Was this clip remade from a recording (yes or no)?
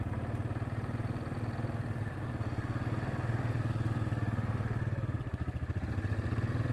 no